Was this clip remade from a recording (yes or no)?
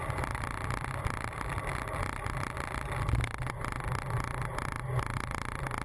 no